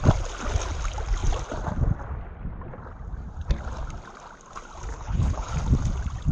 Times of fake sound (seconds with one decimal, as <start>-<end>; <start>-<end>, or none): 4.9-5.5